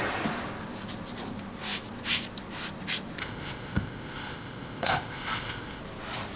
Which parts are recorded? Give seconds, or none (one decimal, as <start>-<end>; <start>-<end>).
0.0-3.2; 5.8-6.4

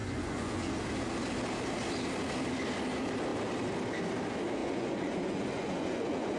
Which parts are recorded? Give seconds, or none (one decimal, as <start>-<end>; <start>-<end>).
0.7-4.6

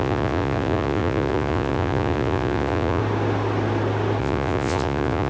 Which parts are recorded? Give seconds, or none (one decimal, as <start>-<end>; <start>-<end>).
3.0-4.2

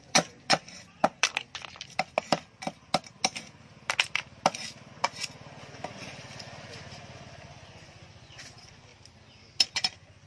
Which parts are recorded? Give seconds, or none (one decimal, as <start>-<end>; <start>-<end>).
1.1-4.9; 8.9-9.7